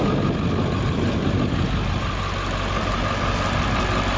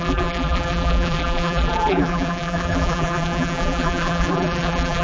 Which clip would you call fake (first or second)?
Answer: second